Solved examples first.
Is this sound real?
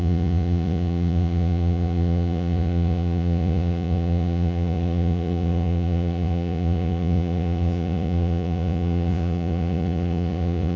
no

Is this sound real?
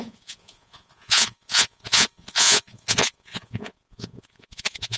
no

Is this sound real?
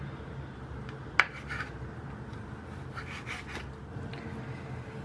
yes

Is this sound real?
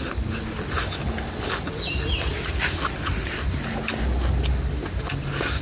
yes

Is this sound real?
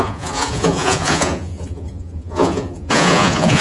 no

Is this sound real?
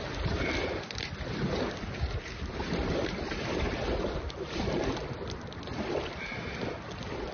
yes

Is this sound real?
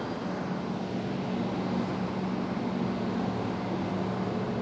yes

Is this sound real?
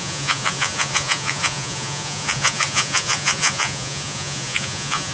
no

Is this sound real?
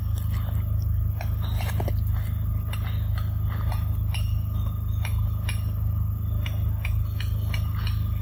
yes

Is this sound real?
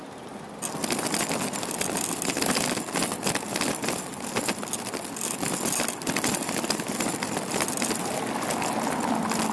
yes